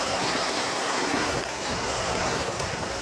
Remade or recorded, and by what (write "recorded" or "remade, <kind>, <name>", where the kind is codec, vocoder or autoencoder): remade, codec, SNAC